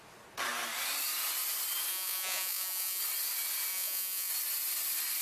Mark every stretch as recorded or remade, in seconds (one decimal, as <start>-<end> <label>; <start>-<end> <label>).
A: 0.0-1.9 recorded; 1.9-3.0 remade; 3.0-3.7 recorded; 3.7-4.3 remade; 4.3-5.2 recorded